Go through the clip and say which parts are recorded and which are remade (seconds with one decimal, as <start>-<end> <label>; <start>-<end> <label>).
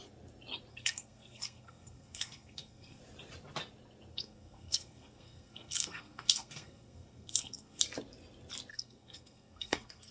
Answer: 0.0-0.7 recorded; 0.7-3.0 remade; 3.0-4.1 recorded; 4.1-7.8 remade; 7.8-8.7 recorded; 8.7-10.1 remade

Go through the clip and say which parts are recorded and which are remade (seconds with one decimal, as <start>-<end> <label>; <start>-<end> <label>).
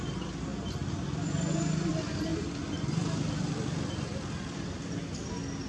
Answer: 0.0-5.7 recorded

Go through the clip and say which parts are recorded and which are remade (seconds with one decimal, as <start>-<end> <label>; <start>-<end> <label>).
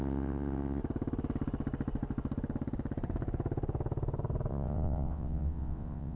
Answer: 0.0-0.8 remade; 0.8-4.5 recorded; 4.5-6.2 remade